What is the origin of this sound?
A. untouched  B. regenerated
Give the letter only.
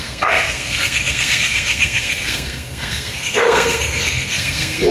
B